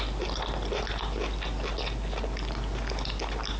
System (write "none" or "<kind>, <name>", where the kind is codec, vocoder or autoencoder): none